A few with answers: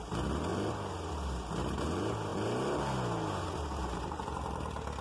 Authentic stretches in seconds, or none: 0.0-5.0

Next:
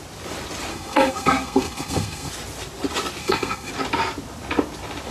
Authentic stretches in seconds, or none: 0.0-0.7; 2.3-3.2; 3.7-5.1

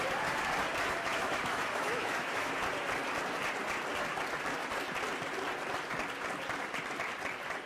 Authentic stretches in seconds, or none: 0.0-1.1; 2.5-7.7

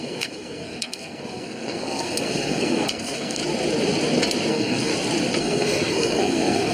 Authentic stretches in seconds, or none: 3.4-4.5; 4.9-5.4

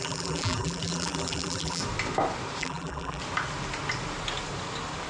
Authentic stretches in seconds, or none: 1.8-2.6; 3.2-5.1